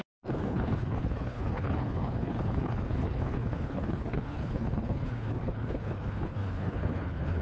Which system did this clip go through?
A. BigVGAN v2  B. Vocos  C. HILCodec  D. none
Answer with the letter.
C